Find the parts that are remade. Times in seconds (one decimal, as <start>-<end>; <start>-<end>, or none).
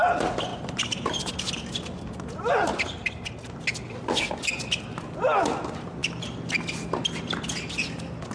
0.5-1.3